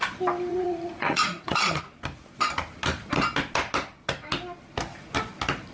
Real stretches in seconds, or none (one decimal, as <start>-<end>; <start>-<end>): 0.0-0.5; 1.8-5.7